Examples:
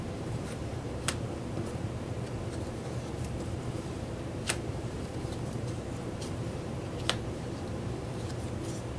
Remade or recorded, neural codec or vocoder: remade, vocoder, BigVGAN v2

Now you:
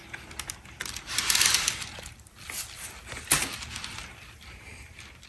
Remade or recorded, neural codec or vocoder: remade, vocoder, BigVGAN v2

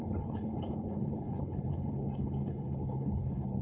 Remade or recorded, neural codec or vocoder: remade, codec, HILCodec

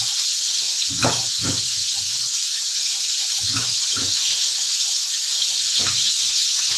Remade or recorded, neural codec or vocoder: remade, autoencoder, DAC-VAE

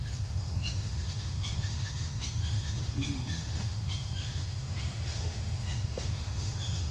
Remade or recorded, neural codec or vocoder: remade, autoencoder, DAC-VAE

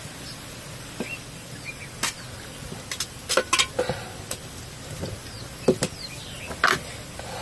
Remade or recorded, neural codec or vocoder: recorded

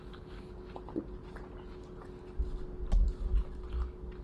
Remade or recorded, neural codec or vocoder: recorded